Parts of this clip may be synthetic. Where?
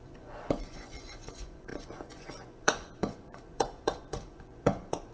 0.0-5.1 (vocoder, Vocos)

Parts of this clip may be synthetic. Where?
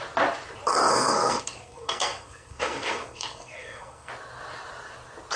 0.9-4.1 (codec, SNAC)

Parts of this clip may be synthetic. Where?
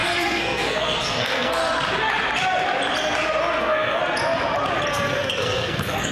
0.0-1.6 (codec, SNAC); 3.6-4.0; 4.9-6.1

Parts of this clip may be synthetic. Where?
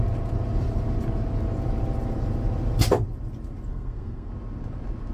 3.7-4.3 (codec, SNAC)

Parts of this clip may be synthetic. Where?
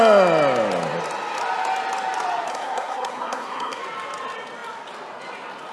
2.5-3.8 (codec, SNAC)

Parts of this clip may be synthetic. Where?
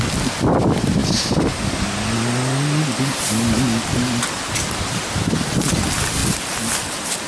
none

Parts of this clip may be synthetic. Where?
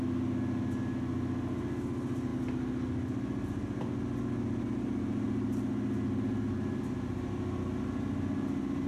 none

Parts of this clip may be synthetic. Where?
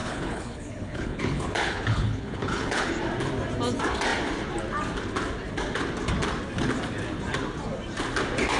0.0-2.9 (codec, HILCodec)